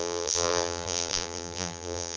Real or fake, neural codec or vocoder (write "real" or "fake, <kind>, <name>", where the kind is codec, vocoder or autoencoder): fake, vocoder, BigVGAN v2